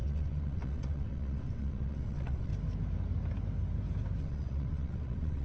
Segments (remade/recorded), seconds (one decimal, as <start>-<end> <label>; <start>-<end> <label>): 0.0-2.5 remade; 2.5-4.2 recorded; 4.2-5.4 remade